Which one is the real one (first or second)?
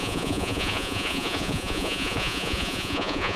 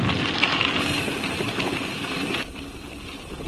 second